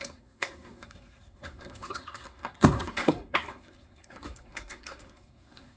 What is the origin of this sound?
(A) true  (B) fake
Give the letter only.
B